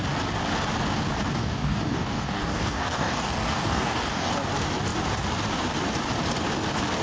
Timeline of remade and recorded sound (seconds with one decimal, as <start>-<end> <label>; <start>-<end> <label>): 0.0-1.4 recorded; 1.4-4.3 remade; 4.3-7.0 recorded

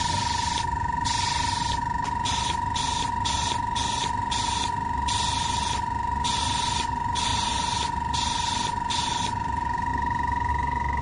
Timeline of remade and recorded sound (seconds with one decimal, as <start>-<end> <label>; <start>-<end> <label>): 0.0-11.0 recorded

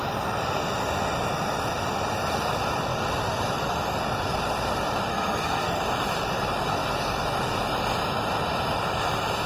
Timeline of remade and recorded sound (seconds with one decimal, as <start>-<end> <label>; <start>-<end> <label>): 0.0-5.1 recorded; 5.1-5.8 remade; 5.8-9.5 recorded

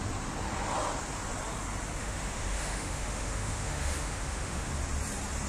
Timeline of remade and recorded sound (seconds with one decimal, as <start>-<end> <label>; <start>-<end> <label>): 0.0-2.0 recorded; 2.0-4.7 remade; 4.7-5.5 recorded

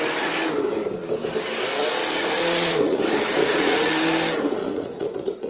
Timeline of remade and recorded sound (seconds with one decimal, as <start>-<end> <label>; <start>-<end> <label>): 0.0-2.2 recorded; 2.2-3.0 remade; 3.0-3.4 recorded; 3.4-3.9 remade; 3.9-4.6 recorded; 4.6-5.5 remade

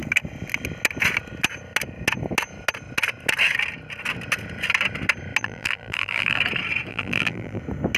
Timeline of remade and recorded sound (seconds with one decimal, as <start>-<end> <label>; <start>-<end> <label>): 0.0-5.4 recorded; 5.4-6.4 remade; 6.4-6.9 recorded; 6.9-7.6 remade; 7.6-8.0 recorded